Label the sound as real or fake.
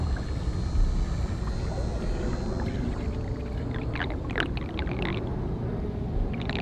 real